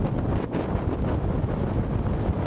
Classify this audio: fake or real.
real